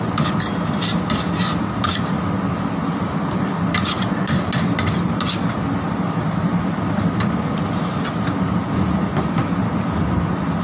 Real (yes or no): yes